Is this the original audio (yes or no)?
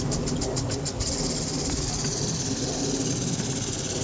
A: yes